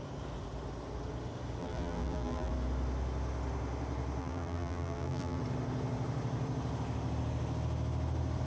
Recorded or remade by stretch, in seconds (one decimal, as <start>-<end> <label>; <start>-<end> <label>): 0.0-1.6 recorded; 1.6-2.5 remade; 2.5-4.2 recorded; 4.2-5.4 remade; 5.4-8.5 recorded